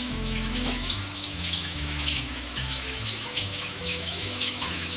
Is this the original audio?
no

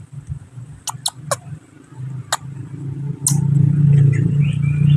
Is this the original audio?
yes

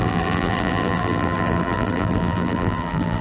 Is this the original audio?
no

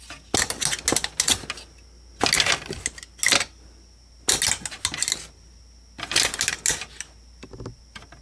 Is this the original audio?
yes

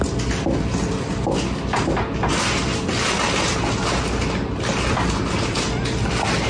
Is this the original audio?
yes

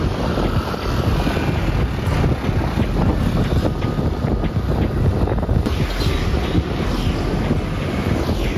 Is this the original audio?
yes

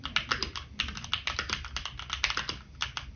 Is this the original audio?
yes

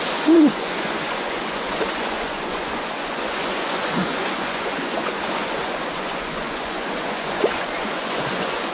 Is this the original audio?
no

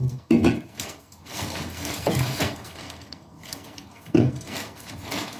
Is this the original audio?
no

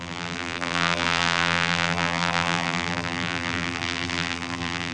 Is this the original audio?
no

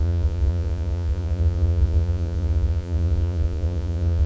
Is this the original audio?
no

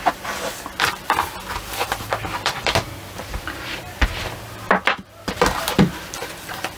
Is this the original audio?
no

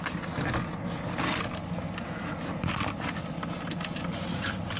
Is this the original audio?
yes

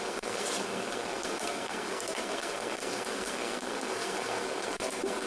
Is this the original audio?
no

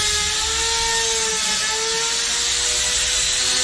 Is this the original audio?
yes